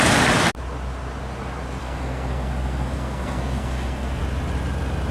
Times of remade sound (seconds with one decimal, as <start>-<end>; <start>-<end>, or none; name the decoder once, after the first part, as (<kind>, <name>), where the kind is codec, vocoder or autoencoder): 1.8-4.2 (codec, SNAC)